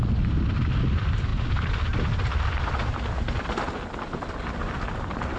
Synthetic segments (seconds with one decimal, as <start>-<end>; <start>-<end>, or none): none